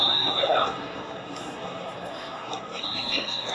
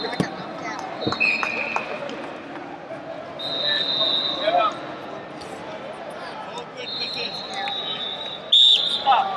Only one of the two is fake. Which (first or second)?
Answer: first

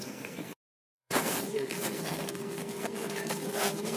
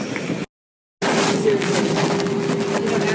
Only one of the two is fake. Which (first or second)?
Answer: first